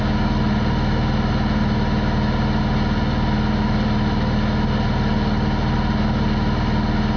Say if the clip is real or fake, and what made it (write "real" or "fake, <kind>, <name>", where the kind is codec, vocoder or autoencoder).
real